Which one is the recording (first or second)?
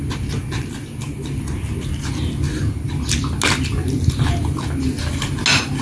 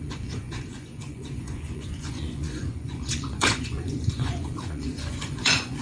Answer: first